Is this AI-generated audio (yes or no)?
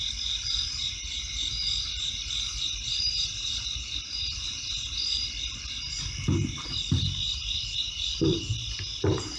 yes